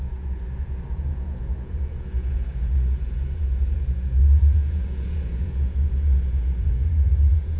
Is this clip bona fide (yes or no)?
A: no